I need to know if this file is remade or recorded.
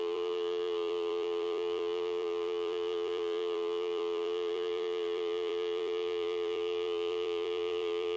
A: remade